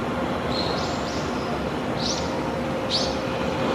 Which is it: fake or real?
real